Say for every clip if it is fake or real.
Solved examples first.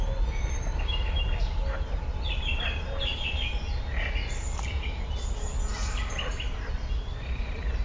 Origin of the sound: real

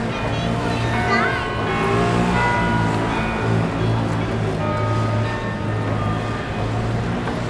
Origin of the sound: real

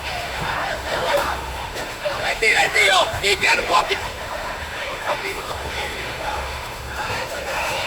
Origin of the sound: fake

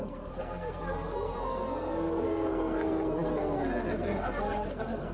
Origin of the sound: fake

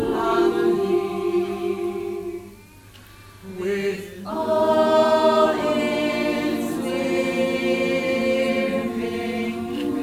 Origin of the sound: real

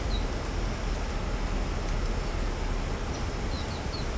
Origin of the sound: real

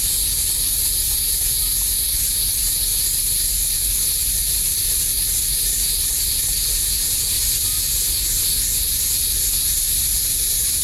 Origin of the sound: real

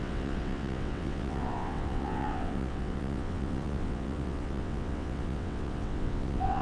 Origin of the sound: fake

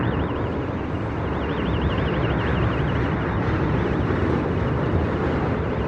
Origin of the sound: real